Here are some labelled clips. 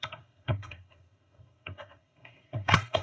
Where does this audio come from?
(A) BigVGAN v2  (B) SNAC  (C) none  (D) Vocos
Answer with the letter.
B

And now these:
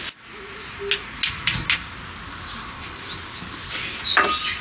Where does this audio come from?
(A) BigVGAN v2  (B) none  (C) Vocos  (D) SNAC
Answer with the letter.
B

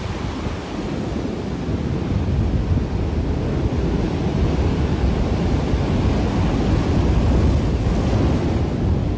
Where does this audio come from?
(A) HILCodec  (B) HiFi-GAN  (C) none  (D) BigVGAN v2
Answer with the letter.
C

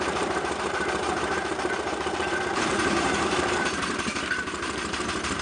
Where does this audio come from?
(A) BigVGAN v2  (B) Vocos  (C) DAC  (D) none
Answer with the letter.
A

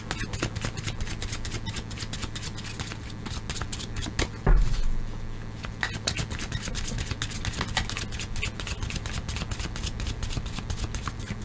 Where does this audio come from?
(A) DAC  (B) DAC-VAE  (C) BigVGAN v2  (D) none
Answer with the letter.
D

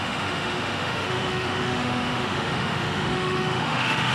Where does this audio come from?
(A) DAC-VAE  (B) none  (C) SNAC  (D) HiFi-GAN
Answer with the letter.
A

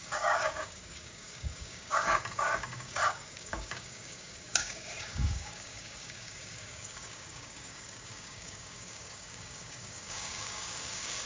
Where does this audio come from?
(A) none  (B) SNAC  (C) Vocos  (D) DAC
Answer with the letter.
D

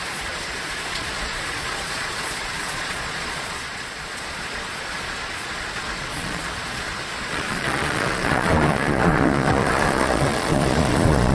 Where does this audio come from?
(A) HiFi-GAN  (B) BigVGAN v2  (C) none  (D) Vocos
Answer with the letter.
D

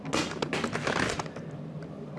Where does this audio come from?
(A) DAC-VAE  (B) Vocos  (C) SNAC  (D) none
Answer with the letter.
D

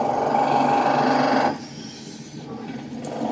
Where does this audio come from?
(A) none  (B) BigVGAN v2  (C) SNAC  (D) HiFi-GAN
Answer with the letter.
A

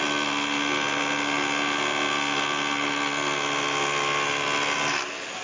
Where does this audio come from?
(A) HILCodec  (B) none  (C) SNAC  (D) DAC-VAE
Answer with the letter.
B